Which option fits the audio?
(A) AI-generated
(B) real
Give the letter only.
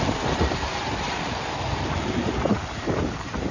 A